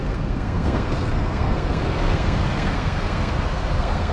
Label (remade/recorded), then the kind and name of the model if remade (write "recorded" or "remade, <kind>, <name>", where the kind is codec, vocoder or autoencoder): remade, codec, SNAC